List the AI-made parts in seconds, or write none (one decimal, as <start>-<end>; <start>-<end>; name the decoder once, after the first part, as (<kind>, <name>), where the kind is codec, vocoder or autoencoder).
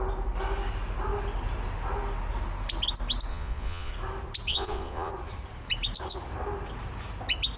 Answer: 3.3-3.9 (vocoder, Vocos); 4.5-5.1